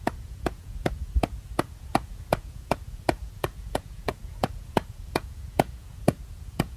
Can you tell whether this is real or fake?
fake